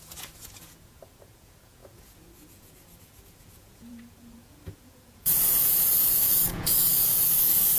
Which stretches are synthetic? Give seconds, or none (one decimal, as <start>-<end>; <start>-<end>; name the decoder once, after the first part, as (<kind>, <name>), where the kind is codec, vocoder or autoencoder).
0.0-7.8 (vocoder, Vocos)